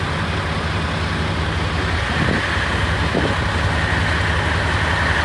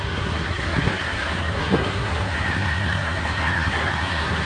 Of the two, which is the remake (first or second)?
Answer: second